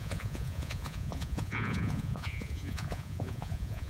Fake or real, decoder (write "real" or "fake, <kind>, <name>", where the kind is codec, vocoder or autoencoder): fake, vocoder, Vocos